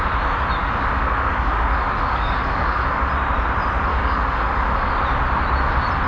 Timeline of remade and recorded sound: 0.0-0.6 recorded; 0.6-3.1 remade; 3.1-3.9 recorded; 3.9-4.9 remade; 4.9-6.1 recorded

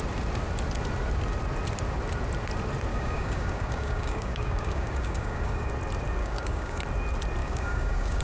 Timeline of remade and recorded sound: 0.0-2.9 recorded; 2.9-5.7 remade; 5.7-6.2 recorded; 6.2-6.8 remade; 6.8-7.4 recorded; 7.4-8.2 remade

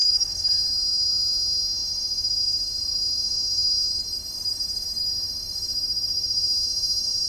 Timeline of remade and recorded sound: 0.0-0.5 remade; 0.5-7.3 recorded

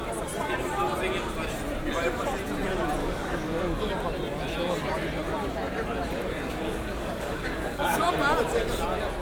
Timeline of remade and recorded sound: 0.0-3.0 recorded; 3.0-3.9 remade; 3.9-6.2 recorded; 6.2-8.1 remade; 8.1-9.2 recorded

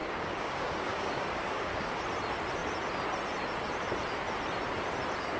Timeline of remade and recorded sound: 0.0-2.0 remade; 2.0-5.4 recorded

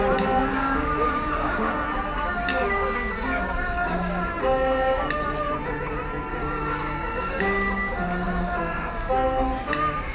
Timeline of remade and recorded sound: 0.0-0.5 recorded; 0.5-1.7 remade; 1.7-2.5 recorded; 2.5-4.3 remade; 4.3-6.3 recorded; 6.3-9.1 remade; 9.1-10.1 recorded

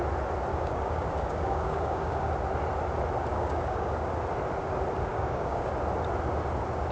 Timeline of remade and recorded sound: 0.0-0.5 recorded; 0.5-2.3 remade; 2.3-3.3 recorded; 3.3-4.1 remade; 4.1-5.1 recorded; 5.1-5.7 remade; 5.7-6.9 recorded